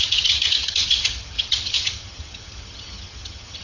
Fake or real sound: fake